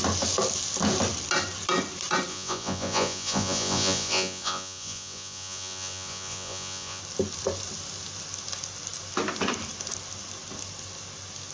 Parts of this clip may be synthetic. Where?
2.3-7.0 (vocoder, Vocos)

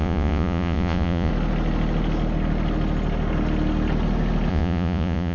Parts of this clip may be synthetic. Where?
0.0-1.3 (vocoder, Vocos); 4.5-5.3

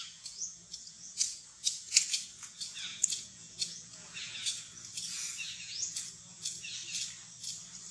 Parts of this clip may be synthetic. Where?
0.0-6.8 (vocoder, Vocos)